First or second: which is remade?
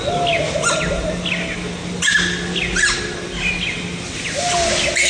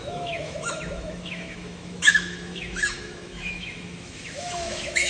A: second